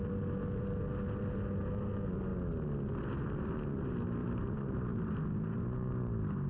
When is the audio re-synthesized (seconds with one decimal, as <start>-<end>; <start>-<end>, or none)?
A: 4.2-5.1